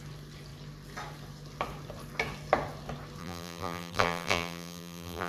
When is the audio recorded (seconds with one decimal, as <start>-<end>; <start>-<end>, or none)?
0.0-3.2